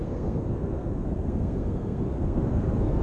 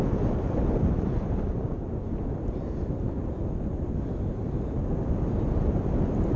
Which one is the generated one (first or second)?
first